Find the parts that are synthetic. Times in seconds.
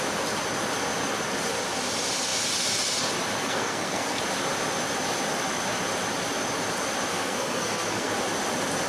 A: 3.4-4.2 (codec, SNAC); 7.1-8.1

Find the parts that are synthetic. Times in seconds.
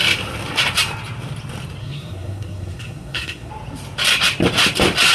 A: 1.8-3.5 (codec, SNAC)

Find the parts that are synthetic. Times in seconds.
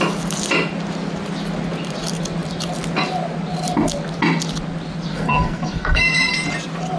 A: 5.1-6.3 (codec, SNAC)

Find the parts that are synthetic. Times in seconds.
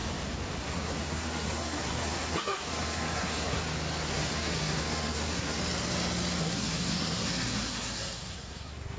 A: 0.6-3.6 (codec, SNAC); 4.1-5.6; 6.4-9.0